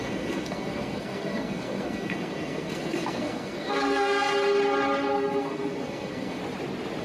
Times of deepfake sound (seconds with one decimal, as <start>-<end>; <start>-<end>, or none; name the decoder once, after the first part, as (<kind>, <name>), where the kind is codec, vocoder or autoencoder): 0.0-4.3 (codec, SNAC); 5.1-6.4